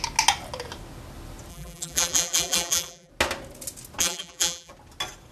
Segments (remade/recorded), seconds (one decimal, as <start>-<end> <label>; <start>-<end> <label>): 0.0-1.5 recorded; 1.5-3.1 remade; 3.1-4.0 recorded; 4.0-4.7 remade; 4.7-5.3 recorded